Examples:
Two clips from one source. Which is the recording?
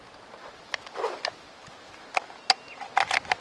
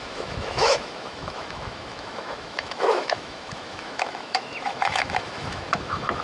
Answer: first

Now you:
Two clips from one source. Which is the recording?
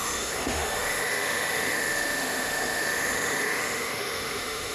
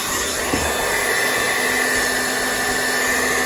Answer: second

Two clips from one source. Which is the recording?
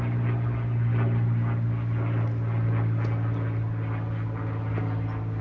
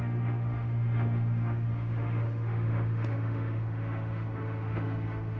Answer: first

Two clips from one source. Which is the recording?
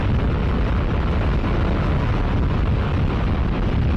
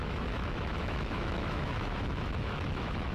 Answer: first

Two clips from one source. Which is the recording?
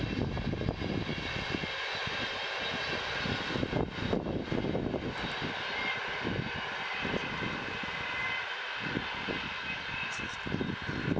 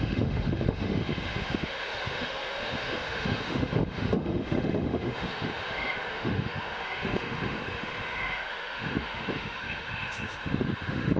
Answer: first